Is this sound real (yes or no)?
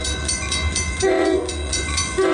no